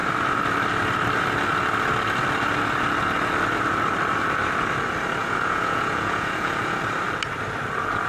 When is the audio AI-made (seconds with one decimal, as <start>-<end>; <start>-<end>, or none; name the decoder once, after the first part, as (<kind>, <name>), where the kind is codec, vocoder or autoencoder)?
5.2-6.8 (vocoder, Vocos)